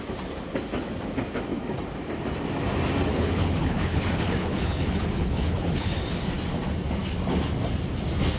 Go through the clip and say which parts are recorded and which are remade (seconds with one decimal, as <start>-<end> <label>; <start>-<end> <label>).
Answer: 0.0-3.1 recorded; 3.1-5.9 remade; 5.9-8.4 recorded